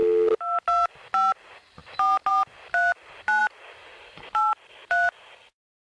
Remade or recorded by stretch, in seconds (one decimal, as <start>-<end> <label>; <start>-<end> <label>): 0.0-5.9 recorded